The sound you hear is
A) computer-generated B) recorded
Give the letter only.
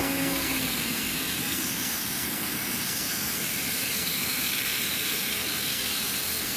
A